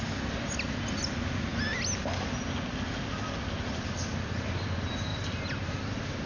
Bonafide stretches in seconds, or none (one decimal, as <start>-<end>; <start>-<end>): 0.0-6.3